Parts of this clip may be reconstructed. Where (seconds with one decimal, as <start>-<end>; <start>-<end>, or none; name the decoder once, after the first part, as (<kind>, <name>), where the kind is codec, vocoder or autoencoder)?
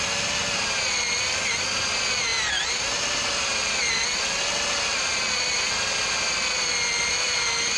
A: none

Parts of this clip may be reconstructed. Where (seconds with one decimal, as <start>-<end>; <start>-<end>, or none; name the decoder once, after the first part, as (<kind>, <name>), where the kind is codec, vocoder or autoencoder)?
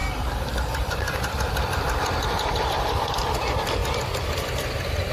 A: 0.0-3.1 (vocoder, BigVGAN v2)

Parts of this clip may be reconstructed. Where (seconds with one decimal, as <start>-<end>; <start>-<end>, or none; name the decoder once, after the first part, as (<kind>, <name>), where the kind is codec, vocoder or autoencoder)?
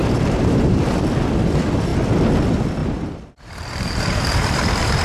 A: 0.0-1.0 (vocoder, BigVGAN v2); 2.8-5.0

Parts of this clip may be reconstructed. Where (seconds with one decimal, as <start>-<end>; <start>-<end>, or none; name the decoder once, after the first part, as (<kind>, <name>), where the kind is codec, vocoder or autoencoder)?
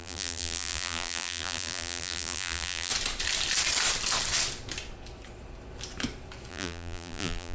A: 0.0-2.9 (vocoder, BigVGAN v2); 6.5-7.5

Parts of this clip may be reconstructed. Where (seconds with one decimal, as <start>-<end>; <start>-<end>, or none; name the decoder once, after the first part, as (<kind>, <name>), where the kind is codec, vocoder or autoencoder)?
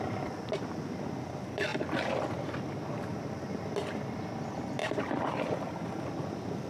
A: 4.8-5.4 (vocoder, BigVGAN v2)